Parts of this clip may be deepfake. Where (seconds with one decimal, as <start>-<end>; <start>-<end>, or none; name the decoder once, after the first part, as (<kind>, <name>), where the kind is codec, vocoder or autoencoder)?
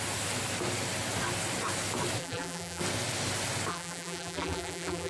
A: 2.2-2.8 (vocoder, BigVGAN v2); 3.7-5.1